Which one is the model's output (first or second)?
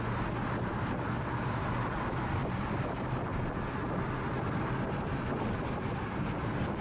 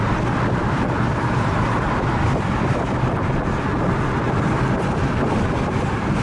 second